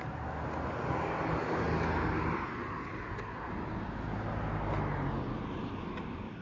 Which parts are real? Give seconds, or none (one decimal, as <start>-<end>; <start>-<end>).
0.0-6.4